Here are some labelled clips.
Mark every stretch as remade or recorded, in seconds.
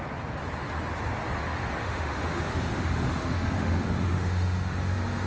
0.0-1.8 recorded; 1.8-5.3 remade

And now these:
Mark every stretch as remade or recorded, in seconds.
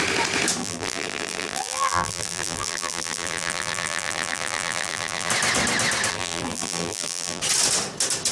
0.0-0.6 recorded; 0.6-5.3 remade; 5.3-6.1 recorded; 6.1-7.4 remade; 7.4-8.3 recorded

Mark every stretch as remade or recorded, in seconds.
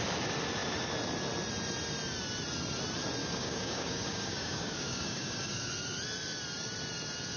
0.0-3.2 recorded; 3.2-5.7 remade; 5.7-7.4 recorded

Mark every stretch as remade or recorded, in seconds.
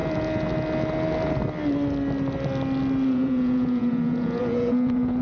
0.0-3.1 recorded; 3.1-5.2 remade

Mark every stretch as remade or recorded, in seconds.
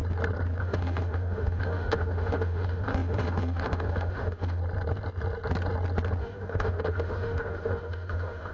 0.0-0.6 recorded; 0.6-4.6 remade; 4.6-6.2 recorded; 6.2-8.5 remade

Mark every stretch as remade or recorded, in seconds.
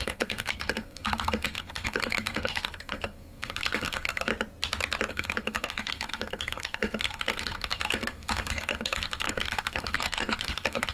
0.0-4.3 remade; 4.3-5.1 recorded; 5.1-10.9 remade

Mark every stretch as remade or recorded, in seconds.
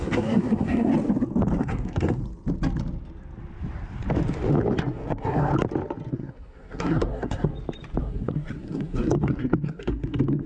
0.0-0.9 remade; 0.9-1.6 recorded; 1.6-2.2 remade; 2.2-4.9 recorded; 4.9-5.5 remade; 5.5-6.1 recorded; 6.1-7.5 remade; 7.5-8.0 recorded; 8.0-10.5 remade